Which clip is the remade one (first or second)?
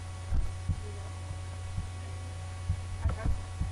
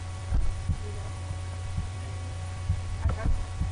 second